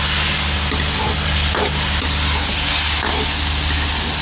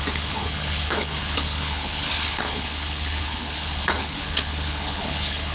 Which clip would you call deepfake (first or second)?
second